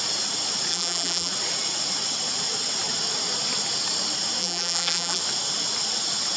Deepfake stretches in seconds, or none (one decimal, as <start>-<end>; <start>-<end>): 0.7-1.3; 4.4-5.2